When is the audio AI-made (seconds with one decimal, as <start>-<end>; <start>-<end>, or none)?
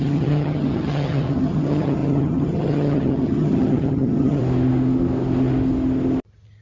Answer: 0.0-4.4